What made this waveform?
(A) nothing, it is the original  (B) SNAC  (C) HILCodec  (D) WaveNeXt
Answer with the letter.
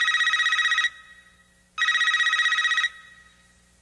A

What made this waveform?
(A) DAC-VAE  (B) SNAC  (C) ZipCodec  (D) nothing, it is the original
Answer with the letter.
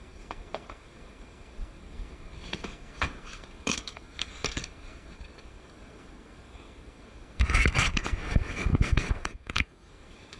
B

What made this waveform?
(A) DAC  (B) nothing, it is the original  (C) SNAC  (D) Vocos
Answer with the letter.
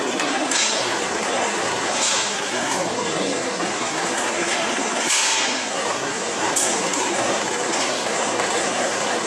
C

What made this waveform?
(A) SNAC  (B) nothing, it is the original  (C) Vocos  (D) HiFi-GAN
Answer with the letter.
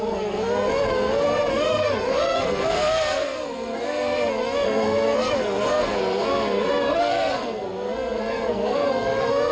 A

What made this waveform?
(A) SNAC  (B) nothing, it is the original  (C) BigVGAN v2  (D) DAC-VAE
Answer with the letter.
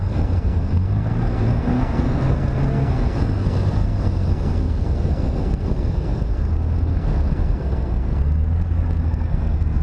A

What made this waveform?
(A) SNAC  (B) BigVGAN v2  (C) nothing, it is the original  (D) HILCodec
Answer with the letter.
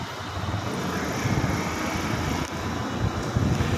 C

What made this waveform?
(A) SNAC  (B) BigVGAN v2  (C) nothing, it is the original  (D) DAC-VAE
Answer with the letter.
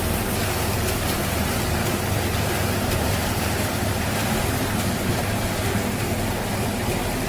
C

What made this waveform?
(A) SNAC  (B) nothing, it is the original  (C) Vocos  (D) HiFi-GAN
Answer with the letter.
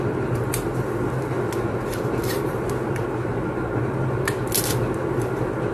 B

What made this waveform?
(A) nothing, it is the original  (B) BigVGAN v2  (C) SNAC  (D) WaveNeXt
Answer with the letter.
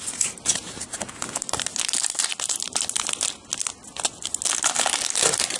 A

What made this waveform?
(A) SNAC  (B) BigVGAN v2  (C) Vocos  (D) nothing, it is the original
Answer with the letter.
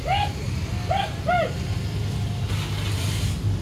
D